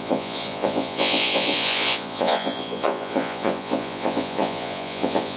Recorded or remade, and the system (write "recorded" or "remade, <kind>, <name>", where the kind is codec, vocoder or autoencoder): remade, vocoder, Vocos